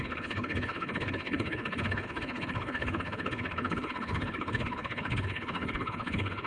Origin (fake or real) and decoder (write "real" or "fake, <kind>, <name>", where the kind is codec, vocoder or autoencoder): fake, codec, HILCodec